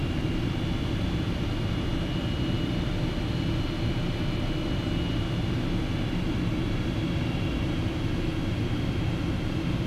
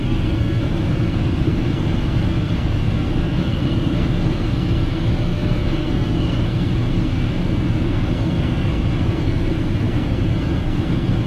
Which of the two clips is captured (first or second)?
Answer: first